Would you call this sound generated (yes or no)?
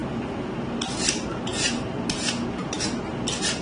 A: no